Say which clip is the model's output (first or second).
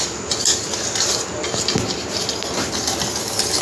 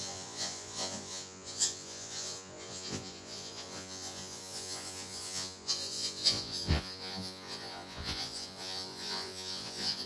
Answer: second